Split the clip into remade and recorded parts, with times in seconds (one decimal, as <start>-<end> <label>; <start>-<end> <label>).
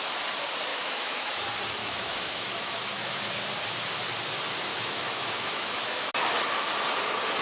0.0-0.7 recorded; 0.7-1.3 remade; 1.3-1.8 recorded; 1.8-3.3 remade; 3.3-4.7 recorded; 4.7-6.1 remade; 6.1-7.4 recorded